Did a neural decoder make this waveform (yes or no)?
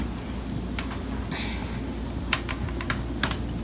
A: no